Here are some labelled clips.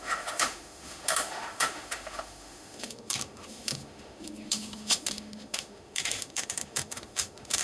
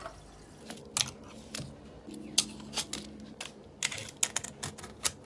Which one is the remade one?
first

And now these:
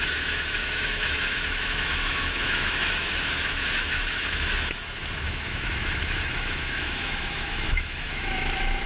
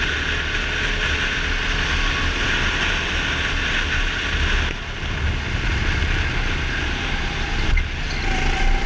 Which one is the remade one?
first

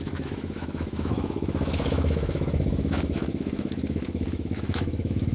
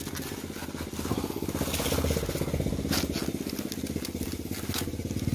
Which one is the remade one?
first